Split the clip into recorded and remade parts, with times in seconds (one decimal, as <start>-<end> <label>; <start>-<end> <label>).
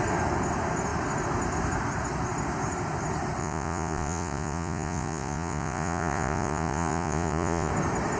0.0-3.4 recorded; 3.4-7.7 remade; 7.7-8.2 recorded